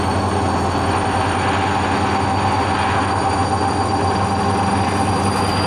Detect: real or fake real